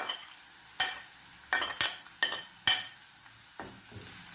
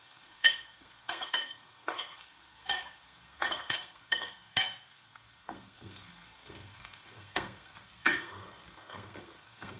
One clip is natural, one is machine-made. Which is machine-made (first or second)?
second